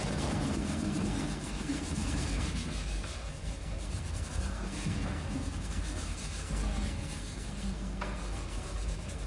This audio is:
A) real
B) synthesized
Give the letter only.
B